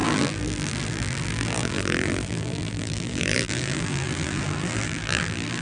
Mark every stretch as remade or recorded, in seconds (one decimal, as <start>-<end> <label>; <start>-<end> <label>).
0.0-5.6 remade